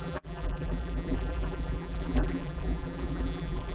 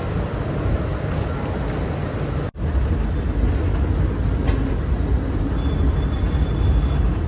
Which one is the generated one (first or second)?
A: first